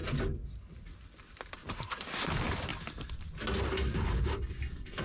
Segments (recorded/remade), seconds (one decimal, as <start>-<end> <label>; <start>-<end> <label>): 0.0-1.5 recorded; 1.5-2.7 remade; 2.7-3.6 recorded; 3.6-5.0 remade